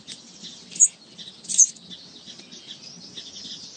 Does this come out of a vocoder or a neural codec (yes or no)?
no